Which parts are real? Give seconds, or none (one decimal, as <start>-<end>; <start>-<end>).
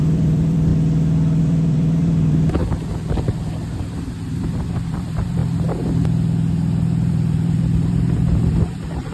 0.7-1.4; 5.4-7.1